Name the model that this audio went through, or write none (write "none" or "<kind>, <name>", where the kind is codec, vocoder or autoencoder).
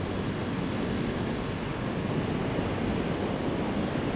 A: none